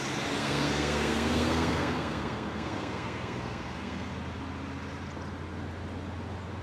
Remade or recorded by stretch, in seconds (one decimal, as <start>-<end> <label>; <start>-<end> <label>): 0.0-0.4 recorded; 0.4-4.1 remade; 4.1-6.6 recorded

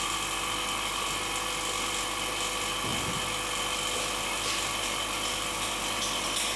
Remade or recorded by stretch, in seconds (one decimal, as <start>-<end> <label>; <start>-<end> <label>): 0.0-6.6 recorded